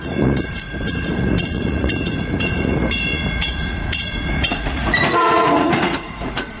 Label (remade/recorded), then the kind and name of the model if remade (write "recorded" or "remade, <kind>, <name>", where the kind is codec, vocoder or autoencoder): remade, vocoder, Vocos